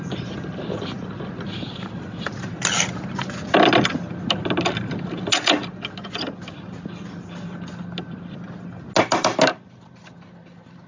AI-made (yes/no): no